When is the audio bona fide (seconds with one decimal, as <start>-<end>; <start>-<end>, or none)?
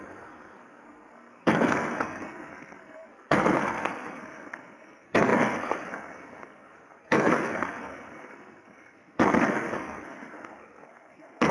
none